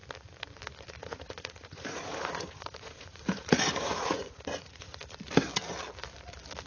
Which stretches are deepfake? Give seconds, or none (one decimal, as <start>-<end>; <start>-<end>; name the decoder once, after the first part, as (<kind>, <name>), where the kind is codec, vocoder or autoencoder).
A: 1.0-5.0 (vocoder, Vocos)